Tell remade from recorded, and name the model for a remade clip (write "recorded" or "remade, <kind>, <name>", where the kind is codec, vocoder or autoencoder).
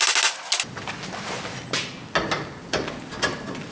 recorded